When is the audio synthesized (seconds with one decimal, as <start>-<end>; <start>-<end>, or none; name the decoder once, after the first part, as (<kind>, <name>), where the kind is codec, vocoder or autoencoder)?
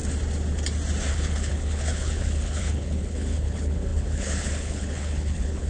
1.1-5.7 (codec, HILCodec)